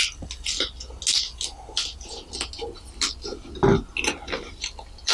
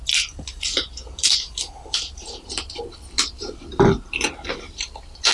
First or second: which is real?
first